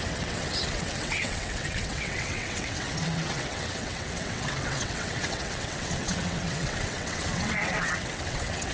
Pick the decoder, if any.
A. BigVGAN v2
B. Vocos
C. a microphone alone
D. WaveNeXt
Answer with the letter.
D